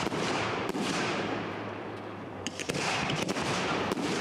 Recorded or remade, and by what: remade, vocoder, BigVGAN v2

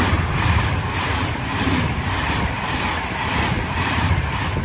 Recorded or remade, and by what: remade, vocoder, BigVGAN v2